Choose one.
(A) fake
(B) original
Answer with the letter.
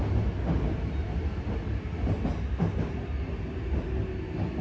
B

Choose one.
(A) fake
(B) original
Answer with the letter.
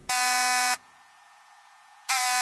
A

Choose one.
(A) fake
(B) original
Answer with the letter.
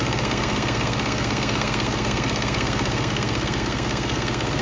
A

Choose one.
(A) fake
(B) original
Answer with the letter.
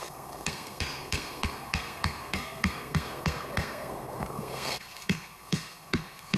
A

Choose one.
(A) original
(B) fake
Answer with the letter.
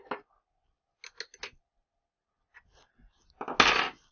A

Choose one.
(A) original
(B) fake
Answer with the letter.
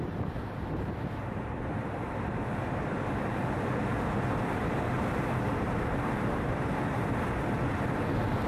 B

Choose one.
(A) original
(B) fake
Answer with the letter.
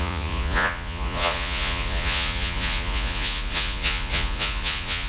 B